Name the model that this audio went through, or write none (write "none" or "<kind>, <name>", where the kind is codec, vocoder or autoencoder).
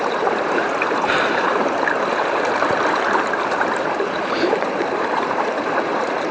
vocoder, BigVGAN v2